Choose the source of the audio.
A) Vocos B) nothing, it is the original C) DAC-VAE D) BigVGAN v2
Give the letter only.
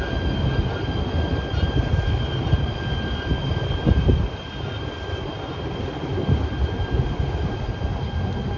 B